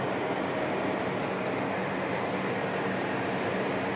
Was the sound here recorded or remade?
recorded